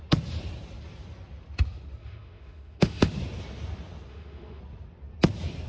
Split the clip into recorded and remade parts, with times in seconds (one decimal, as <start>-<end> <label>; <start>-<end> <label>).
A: 0.0-2.0 recorded; 2.0-3.1 remade; 3.1-4.1 recorded; 4.1-4.6 remade; 4.6-5.7 recorded